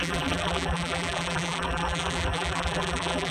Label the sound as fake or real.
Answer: fake